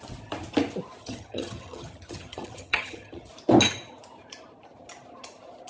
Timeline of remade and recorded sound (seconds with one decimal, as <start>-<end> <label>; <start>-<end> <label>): 0.0-1.0 recorded; 1.0-3.3 remade; 3.3-5.7 recorded